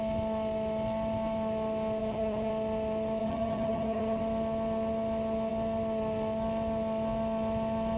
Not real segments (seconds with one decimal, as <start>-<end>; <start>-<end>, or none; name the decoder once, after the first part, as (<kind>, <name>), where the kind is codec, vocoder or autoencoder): 2.0-2.5 (vocoder, HiFi-GAN); 3.2-4.2